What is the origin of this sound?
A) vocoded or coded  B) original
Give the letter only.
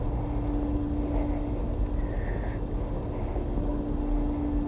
B